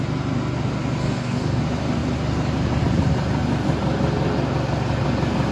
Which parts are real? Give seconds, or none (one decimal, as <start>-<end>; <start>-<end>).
0.0-1.0; 1.6-5.5